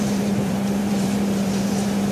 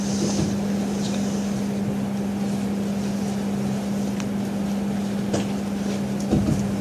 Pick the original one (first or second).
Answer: second